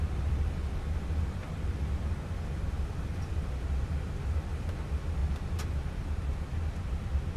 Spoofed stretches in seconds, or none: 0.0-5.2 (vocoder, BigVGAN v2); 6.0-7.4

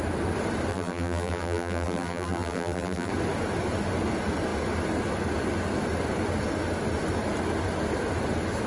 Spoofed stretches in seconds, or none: 0.7-3.1 (vocoder, BigVGAN v2)